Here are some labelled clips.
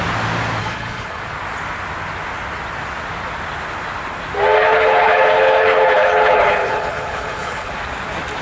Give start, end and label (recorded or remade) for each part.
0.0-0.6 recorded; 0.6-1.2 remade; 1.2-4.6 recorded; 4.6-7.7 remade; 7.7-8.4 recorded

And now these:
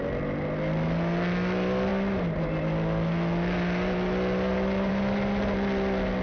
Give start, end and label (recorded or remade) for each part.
0.0-6.2 recorded

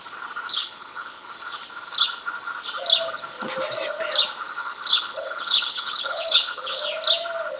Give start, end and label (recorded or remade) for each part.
0.0-0.5 recorded; 0.5-1.3 remade; 1.3-4.6 recorded; 4.6-6.8 remade; 6.8-7.6 recorded

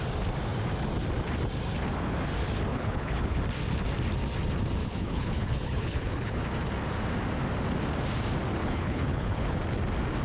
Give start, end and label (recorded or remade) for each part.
0.0-2.7 recorded; 2.7-3.4 remade; 3.4-4.8 recorded; 4.8-6.4 remade; 6.4-8.6 recorded; 8.6-9.6 remade; 9.6-10.2 recorded

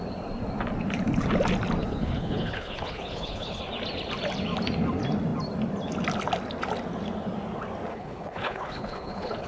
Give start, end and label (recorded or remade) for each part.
0.0-1.8 recorded; 1.8-3.6 remade; 3.6-7.9 recorded; 7.9-9.5 remade

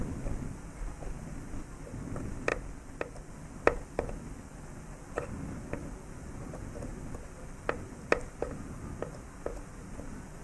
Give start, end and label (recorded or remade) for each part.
0.0-10.4 recorded